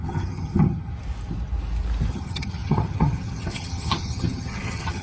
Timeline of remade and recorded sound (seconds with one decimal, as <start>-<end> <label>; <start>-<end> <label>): 0.0-0.9 remade; 0.9-2.1 recorded; 2.1-5.0 remade